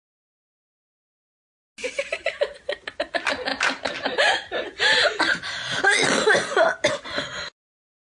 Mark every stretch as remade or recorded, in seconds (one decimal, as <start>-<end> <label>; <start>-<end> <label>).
0.0-8.0 recorded